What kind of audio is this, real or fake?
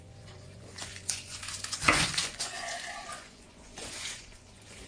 fake